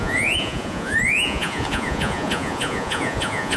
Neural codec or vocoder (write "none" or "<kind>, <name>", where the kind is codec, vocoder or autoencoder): vocoder, Vocos